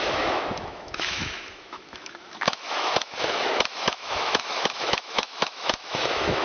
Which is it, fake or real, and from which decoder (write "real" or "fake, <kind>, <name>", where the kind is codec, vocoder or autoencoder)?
fake, autoencoder, DAC-VAE